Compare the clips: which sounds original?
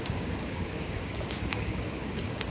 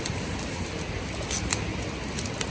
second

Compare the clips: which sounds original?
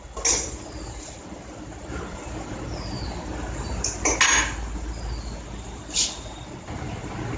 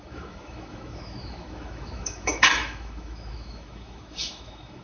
first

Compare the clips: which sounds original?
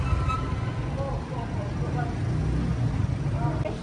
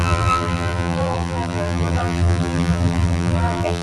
first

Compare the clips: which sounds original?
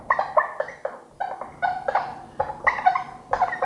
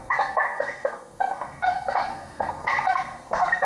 first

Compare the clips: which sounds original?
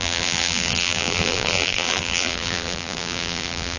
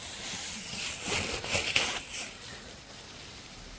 second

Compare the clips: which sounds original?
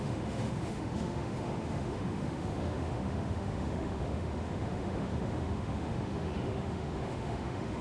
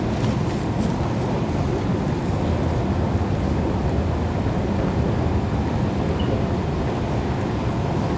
second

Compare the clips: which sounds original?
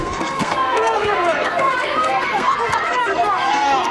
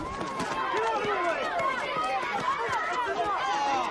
second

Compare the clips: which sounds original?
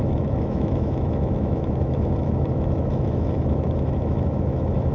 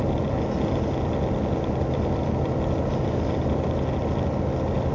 second